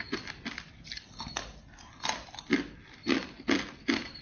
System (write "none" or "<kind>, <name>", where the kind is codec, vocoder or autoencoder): none